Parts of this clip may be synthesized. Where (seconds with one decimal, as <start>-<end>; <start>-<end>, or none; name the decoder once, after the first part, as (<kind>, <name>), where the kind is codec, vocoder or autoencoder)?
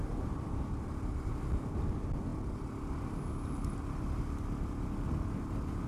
none